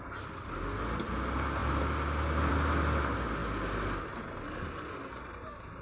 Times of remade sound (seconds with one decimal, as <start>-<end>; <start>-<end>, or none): none